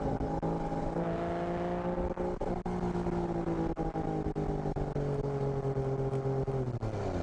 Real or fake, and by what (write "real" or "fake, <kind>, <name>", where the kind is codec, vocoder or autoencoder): real